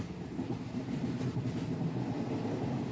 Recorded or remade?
recorded